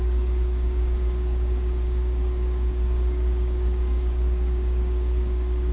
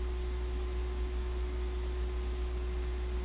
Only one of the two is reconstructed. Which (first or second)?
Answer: first